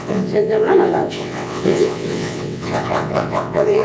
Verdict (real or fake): fake